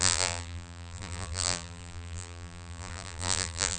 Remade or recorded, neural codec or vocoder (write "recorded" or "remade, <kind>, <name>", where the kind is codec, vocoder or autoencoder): remade, vocoder, BigVGAN v2